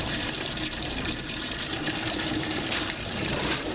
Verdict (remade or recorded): remade